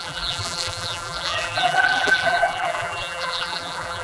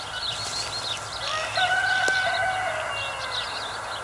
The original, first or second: second